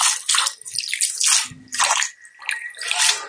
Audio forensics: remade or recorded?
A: recorded